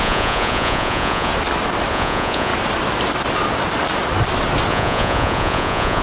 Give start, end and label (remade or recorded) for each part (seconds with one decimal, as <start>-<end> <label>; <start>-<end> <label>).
0.0-1.3 remade; 1.3-1.9 recorded; 1.9-2.5 remade; 2.5-4.7 recorded; 4.7-6.0 remade

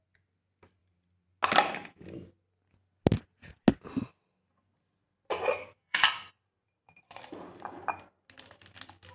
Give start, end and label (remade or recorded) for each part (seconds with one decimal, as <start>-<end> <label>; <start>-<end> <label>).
0.0-5.6 recorded; 5.6-6.3 remade; 6.3-9.1 recorded

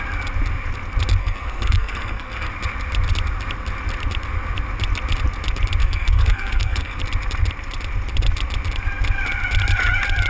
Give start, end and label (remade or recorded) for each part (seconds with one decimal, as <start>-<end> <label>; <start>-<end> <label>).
0.0-1.2 recorded; 1.2-2.5 remade; 2.5-5.8 recorded; 5.8-7.0 remade; 7.0-10.3 recorded

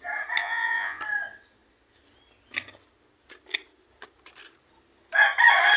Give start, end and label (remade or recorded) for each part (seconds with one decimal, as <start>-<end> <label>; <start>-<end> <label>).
0.0-0.4 recorded; 0.4-1.0 remade; 1.0-5.8 recorded

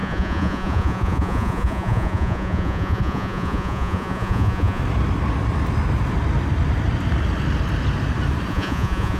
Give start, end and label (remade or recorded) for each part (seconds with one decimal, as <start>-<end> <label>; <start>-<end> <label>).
0.0-4.8 remade; 4.8-8.5 recorded; 8.5-9.2 remade

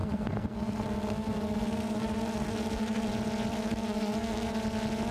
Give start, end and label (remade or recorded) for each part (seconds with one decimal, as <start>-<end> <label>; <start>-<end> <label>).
0.0-3.1 remade; 3.1-3.5 recorded; 3.5-4.5 remade; 4.5-5.1 recorded

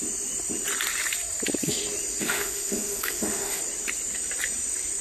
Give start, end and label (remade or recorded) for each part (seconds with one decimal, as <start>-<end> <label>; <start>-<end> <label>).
0.0-2.2 recorded; 2.2-3.6 remade; 3.6-5.0 recorded

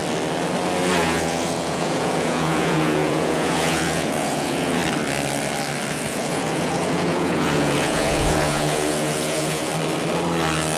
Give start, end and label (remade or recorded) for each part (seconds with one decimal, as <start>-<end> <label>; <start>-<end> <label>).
0.0-0.9 recorded; 0.9-4.8 remade; 4.8-5.9 recorded; 5.9-9.7 remade; 9.7-10.8 recorded